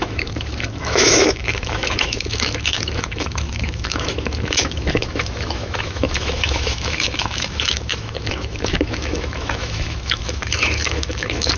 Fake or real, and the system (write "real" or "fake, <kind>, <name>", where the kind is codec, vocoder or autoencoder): fake, autoencoder, DAC-VAE